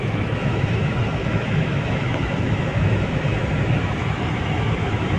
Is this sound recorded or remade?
remade